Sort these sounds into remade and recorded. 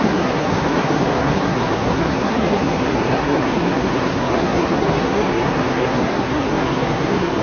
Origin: remade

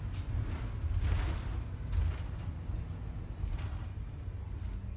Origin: recorded